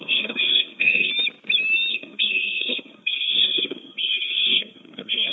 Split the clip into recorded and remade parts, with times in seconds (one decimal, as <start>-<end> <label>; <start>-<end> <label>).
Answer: 0.0-1.1 remade; 1.1-1.9 recorded; 1.9-5.3 remade